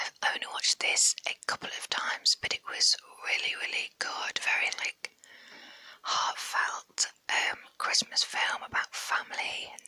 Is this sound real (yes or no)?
yes